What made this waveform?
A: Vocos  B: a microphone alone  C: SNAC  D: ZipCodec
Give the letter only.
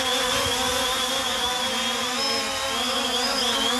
B